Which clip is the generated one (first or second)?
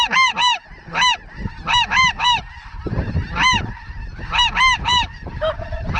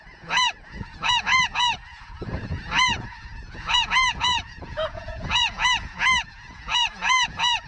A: second